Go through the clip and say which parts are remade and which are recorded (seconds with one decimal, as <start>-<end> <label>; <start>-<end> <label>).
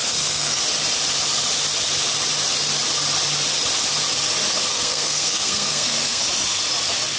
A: 0.0-0.6 remade; 0.6-4.7 recorded; 4.7-6.2 remade; 6.2-7.2 recorded